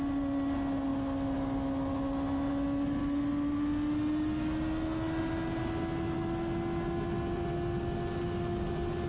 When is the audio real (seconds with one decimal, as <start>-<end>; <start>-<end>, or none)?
0.0-9.1